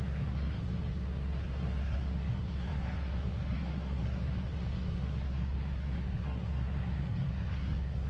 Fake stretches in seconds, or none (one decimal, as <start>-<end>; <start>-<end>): 0.0-8.1